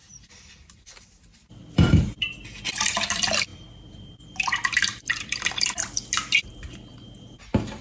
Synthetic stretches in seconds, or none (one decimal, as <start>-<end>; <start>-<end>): 0.6-2.2; 3.5-5.7